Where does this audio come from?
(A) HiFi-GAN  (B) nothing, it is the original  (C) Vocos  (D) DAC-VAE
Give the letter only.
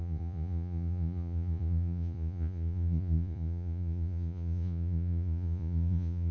C